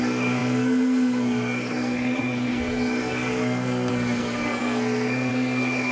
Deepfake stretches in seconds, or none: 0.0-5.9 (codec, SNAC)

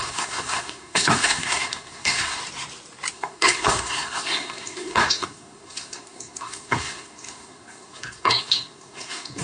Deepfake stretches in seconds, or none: 0.0-2.4 (codec, SNAC); 3.1-9.4

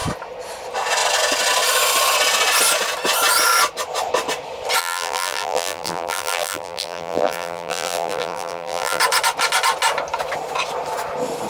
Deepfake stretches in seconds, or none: 4.8-9.0 (vocoder, BigVGAN v2)

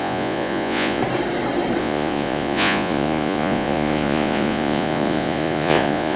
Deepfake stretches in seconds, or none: 0.0-1.0 (vocoder, Vocos); 1.8-6.2